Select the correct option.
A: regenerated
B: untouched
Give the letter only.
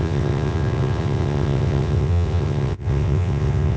A